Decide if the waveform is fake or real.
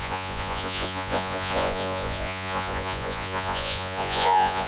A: fake